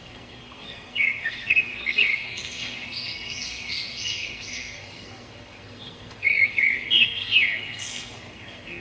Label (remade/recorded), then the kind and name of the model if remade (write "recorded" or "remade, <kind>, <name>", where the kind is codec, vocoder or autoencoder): remade, codec, SNAC